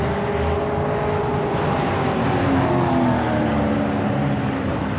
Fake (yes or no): no